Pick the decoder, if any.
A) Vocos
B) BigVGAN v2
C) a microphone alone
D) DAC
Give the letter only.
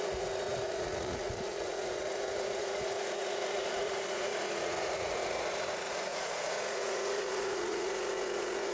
A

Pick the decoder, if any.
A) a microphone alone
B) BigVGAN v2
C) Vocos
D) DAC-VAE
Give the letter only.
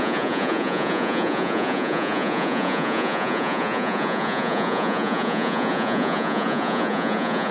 C